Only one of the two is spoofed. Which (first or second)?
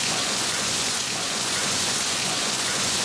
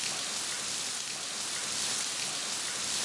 first